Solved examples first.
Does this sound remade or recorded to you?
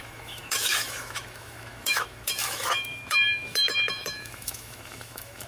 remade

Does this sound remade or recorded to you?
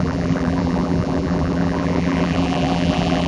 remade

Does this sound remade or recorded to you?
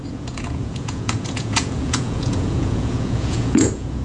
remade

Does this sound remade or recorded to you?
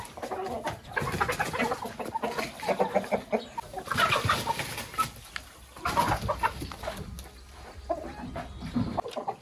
recorded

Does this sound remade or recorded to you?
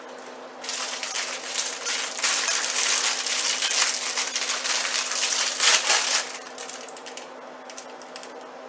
recorded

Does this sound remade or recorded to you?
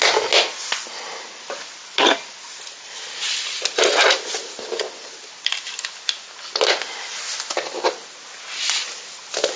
recorded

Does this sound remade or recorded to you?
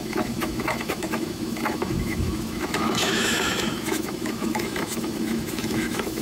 remade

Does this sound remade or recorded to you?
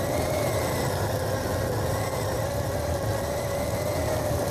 recorded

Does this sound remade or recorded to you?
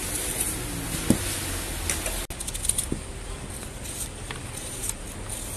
recorded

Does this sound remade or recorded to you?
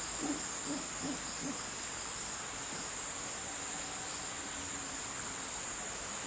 recorded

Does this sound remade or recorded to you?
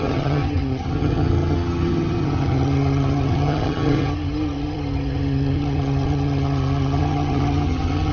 remade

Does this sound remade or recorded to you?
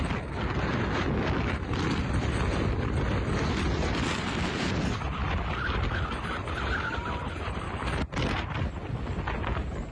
recorded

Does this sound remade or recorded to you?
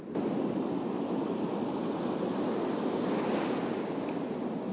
recorded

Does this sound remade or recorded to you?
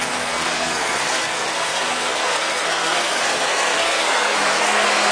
remade